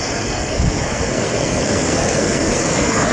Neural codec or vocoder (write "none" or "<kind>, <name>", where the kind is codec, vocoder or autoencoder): codec, SNAC